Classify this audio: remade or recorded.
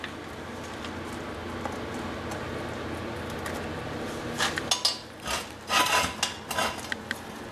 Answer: recorded